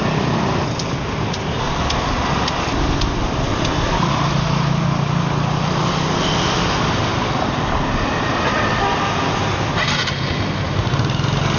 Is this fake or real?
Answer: real